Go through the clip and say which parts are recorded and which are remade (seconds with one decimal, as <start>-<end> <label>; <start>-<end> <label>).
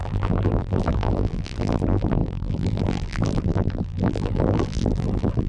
0.0-5.5 remade